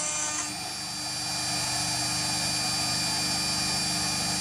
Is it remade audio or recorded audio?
recorded